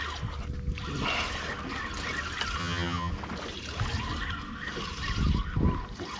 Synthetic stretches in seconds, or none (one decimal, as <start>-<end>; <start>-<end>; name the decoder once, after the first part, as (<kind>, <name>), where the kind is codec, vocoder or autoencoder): 2.6-3.1 (vocoder, HiFi-GAN)

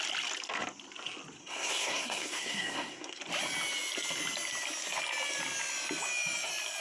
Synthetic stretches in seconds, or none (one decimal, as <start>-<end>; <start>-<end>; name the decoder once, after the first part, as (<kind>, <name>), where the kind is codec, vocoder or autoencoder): 1.4-3.2 (codec, SNAC)

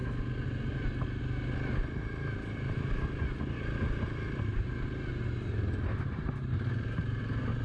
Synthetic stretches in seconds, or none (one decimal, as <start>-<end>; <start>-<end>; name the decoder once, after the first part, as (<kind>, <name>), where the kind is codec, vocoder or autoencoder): none

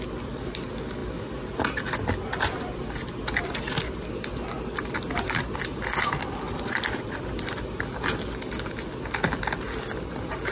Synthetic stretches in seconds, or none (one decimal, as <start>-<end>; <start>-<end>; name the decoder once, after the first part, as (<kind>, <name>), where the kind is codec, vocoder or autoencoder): none

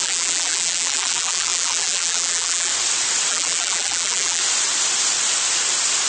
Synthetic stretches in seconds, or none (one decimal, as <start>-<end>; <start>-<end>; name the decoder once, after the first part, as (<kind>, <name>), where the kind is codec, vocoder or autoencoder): 0.0-2.7 (vocoder, BigVGAN v2); 3.3-4.4

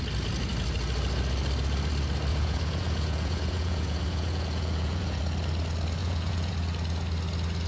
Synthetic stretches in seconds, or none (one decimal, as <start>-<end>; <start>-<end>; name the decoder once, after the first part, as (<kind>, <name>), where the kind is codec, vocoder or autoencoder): 2.3-5.2 (vocoder, Vocos); 6.0-6.5